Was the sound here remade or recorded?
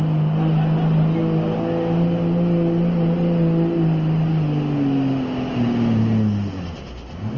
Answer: recorded